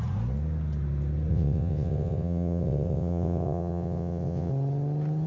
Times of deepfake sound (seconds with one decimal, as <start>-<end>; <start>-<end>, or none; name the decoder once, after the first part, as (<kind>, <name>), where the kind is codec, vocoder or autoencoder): 1.3-4.5 (vocoder, WaveNeXt)